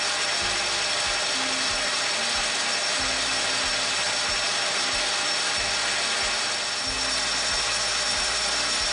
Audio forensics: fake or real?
real